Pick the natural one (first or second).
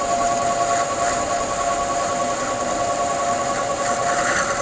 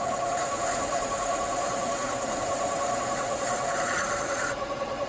first